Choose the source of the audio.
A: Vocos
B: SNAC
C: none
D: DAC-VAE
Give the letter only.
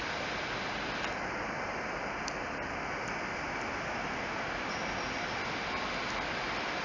C